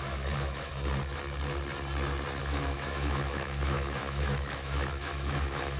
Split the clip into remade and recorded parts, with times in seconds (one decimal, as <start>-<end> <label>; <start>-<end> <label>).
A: 0.0-0.7 remade; 0.7-2.4 recorded; 2.4-5.8 remade